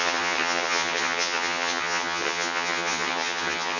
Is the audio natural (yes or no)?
no